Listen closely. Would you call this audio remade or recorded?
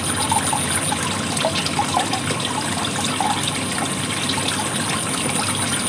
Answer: recorded